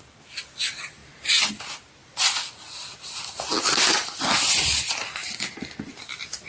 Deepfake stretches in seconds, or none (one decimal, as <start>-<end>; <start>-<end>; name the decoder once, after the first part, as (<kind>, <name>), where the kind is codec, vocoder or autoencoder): none